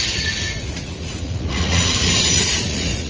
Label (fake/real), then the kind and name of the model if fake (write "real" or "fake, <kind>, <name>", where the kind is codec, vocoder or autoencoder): fake, vocoder, Vocos